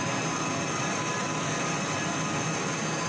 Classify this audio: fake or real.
real